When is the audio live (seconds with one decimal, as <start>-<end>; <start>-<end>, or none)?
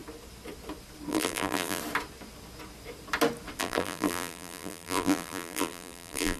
0.0-1.1; 1.8-3.6